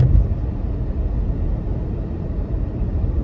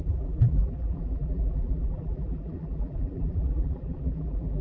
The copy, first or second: second